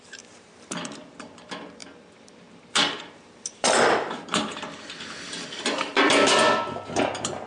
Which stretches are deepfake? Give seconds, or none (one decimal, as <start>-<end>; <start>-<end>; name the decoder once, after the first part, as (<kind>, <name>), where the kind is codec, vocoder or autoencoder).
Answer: 0.0-7.5 (vocoder, BigVGAN v2)